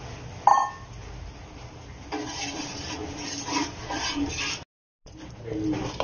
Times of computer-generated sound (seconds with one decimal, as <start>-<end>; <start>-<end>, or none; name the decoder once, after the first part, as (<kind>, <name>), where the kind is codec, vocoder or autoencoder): none